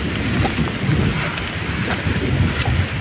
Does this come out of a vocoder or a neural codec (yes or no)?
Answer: no